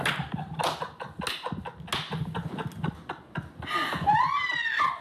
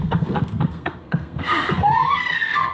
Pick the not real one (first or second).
second